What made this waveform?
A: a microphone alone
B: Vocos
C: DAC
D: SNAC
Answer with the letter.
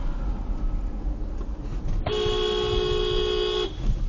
A